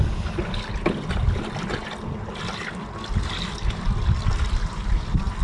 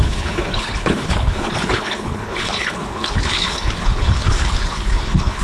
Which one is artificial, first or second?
second